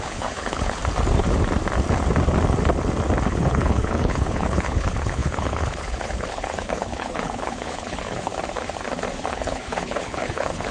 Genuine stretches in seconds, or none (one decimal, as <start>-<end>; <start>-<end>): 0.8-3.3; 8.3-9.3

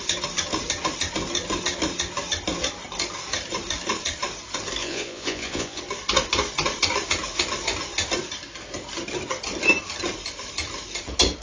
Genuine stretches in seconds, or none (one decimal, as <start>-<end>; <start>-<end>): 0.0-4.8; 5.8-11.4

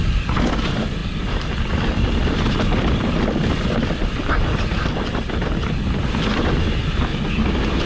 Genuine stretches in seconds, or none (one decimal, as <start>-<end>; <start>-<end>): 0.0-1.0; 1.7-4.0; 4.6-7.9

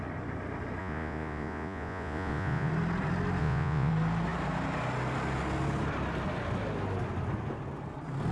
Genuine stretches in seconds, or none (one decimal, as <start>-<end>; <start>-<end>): 0.0-0.8; 2.7-3.4; 3.9-8.3

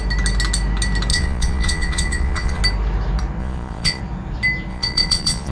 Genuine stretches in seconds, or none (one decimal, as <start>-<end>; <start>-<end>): 0.0-1.1; 2.6-3.4; 4.0-4.7

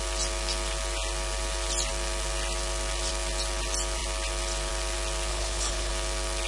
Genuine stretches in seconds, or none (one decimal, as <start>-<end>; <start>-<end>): 0.0-5.3; 5.9-6.5

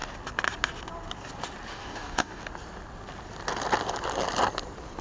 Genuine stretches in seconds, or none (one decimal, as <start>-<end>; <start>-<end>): 0.0-1.7; 2.4-5.0

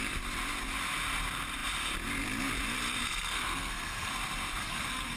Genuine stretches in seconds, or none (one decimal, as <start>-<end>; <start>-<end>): 0.0-3.1; 4.1-4.6